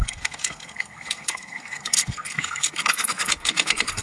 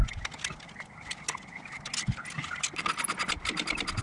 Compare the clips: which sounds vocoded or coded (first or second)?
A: first